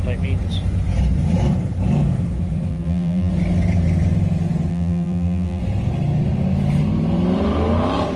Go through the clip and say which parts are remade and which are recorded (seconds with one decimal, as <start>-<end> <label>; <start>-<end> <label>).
0.0-2.7 recorded; 2.7-3.3 remade; 3.3-4.7 recorded; 4.7-5.6 remade; 5.6-8.2 recorded